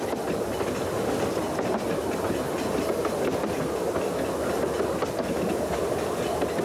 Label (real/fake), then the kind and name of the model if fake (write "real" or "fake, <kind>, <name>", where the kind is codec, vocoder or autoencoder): real